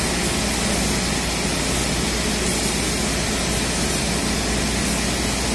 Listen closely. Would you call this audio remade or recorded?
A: recorded